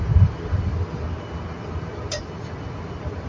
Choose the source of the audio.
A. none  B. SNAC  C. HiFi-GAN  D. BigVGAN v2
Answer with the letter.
A